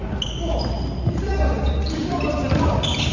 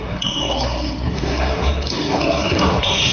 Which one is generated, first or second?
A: second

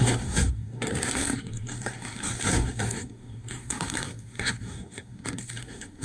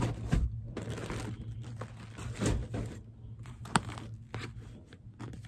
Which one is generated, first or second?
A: first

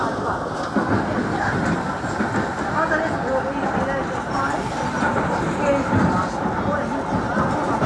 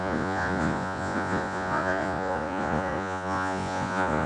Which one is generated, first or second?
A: second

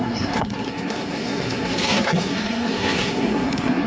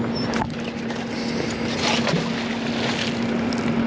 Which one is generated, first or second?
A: first